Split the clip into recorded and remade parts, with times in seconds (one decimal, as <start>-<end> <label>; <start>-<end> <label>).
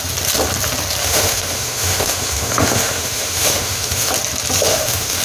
0.0-1.0 recorded; 1.0-4.1 remade; 4.1-4.7 recorded; 4.7-5.2 remade